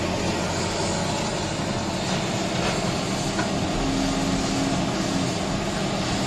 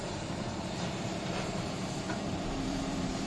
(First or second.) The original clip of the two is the first